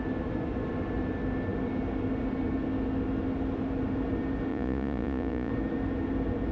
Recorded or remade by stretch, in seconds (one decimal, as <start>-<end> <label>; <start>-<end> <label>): 0.0-4.5 recorded; 4.5-5.5 remade; 5.5-6.5 recorded